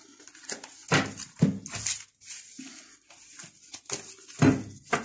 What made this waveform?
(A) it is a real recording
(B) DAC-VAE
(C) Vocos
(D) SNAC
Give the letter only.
A